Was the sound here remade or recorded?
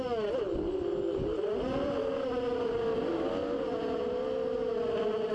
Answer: recorded